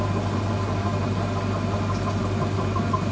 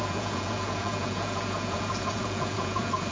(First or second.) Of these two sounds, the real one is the first